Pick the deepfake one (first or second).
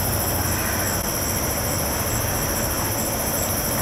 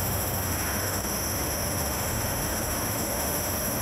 second